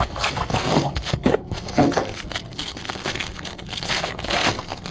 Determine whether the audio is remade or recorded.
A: remade